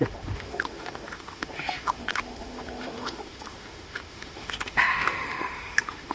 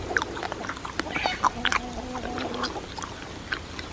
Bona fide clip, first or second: second